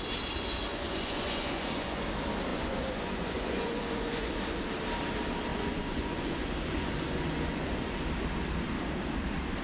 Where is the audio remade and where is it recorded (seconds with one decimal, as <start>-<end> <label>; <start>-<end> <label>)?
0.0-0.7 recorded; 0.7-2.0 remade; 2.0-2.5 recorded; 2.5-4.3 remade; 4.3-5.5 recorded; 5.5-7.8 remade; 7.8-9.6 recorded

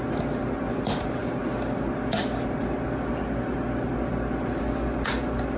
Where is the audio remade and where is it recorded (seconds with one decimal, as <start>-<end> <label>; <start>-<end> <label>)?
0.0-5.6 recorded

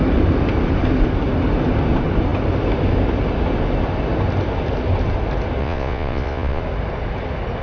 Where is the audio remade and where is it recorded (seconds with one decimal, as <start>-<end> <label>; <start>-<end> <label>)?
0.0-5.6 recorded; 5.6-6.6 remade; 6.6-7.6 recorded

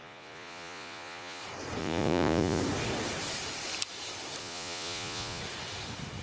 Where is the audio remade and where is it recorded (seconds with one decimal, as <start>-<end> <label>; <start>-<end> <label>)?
0.0-1.4 remade; 1.4-1.8 recorded; 1.8-2.6 remade; 2.6-4.4 recorded; 4.4-5.4 remade; 5.4-6.2 recorded